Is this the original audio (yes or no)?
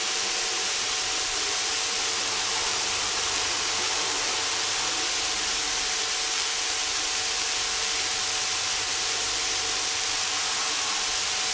yes